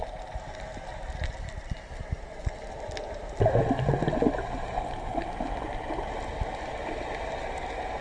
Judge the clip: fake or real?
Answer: real